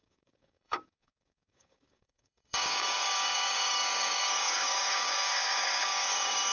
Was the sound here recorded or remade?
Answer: remade